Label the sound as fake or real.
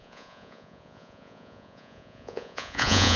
fake